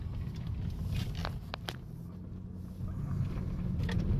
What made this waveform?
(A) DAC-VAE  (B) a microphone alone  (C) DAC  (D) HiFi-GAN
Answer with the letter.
B